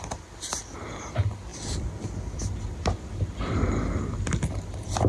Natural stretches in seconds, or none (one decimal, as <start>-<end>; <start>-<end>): 0.0-5.1